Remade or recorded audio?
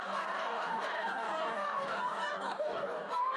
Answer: remade